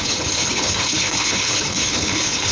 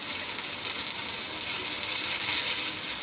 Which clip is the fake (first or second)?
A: first